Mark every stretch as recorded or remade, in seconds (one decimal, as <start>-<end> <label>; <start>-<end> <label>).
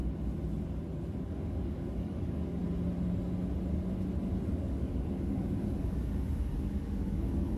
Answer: 0.0-1.2 recorded; 1.2-2.6 remade; 2.6-4.5 recorded; 4.5-7.6 remade